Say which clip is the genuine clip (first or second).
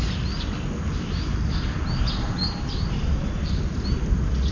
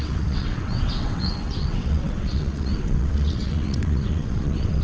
first